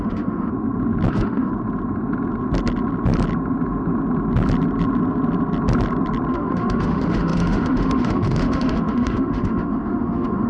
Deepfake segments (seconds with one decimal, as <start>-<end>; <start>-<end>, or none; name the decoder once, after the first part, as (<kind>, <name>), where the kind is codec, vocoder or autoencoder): 0.0-0.5 (autoencoder, DAC-VAE); 1.1-1.5; 6.3-10.5